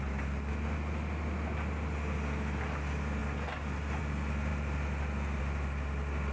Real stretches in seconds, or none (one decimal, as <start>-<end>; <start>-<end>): 0.0-6.3